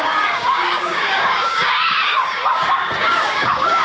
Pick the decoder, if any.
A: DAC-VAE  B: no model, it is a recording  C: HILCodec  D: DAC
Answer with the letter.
D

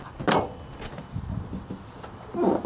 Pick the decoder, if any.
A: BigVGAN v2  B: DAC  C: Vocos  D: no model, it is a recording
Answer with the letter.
D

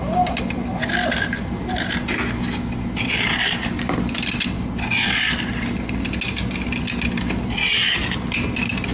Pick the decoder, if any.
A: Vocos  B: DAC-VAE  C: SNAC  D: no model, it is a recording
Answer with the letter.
D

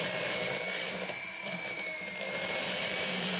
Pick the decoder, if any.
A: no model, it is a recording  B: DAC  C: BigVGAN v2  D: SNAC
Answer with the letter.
C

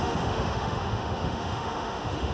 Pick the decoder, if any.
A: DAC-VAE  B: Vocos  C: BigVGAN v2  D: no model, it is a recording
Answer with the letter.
A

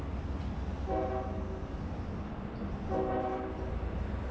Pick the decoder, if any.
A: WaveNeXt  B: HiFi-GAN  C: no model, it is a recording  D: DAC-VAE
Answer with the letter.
C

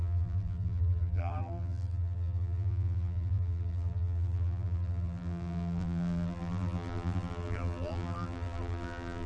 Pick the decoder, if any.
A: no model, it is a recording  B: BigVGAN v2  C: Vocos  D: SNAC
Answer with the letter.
B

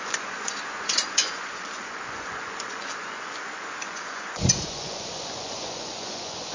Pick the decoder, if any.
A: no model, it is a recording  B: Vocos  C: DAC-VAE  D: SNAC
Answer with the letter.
B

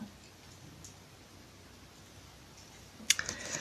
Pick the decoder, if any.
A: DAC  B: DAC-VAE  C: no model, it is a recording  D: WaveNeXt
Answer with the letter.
C